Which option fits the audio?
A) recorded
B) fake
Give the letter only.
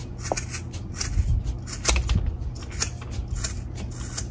A